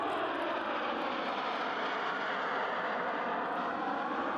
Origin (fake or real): real